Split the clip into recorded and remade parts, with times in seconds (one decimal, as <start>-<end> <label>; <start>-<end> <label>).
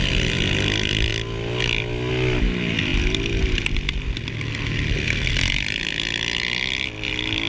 0.0-7.5 recorded